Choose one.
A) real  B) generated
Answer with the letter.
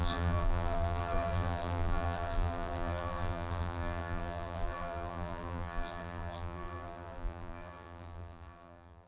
B